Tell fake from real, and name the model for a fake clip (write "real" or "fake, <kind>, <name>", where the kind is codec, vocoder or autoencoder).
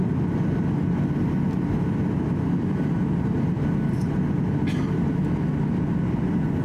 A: real